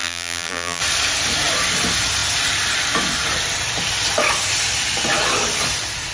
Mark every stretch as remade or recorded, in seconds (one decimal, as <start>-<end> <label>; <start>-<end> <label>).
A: 0.0-0.8 remade; 0.8-6.1 recorded